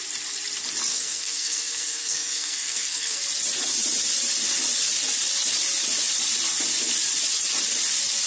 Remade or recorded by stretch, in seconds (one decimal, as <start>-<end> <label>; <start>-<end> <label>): 0.0-0.9 recorded; 0.9-3.2 remade; 3.2-8.3 recorded